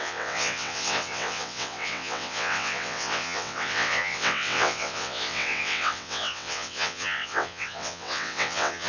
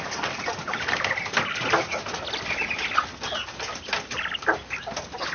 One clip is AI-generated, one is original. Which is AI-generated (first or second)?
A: first